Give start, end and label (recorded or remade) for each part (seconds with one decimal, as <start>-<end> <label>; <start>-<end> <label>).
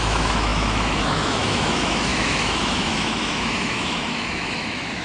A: 0.0-5.0 remade